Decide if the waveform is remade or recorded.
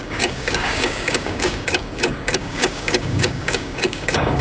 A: remade